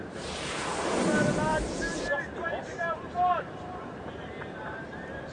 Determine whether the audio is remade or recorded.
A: remade